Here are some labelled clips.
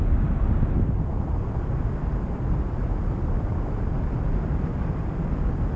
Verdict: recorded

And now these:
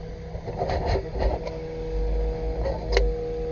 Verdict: recorded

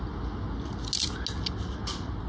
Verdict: recorded